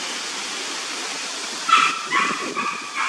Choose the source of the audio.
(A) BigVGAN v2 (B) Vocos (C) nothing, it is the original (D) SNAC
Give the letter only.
C